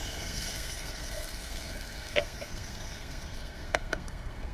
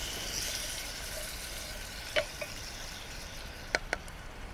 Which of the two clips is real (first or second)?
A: second